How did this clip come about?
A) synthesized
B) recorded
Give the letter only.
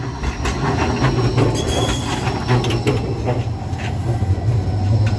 B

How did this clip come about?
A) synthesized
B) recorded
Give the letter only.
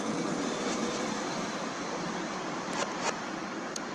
B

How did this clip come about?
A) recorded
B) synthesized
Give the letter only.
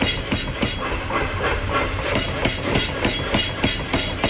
B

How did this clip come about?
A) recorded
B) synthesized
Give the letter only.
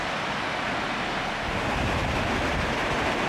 A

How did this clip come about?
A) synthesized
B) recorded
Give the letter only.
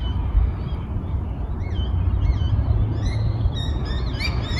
B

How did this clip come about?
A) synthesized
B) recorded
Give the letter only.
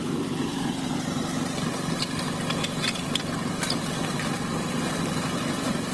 A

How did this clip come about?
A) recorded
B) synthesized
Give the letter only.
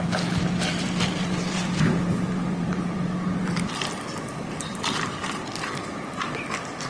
B